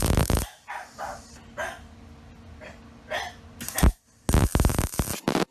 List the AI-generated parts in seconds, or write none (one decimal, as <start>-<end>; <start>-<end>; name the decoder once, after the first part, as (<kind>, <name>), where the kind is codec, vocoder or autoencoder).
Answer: 0.0-1.1 (vocoder, BigVGAN v2); 4.4-5.5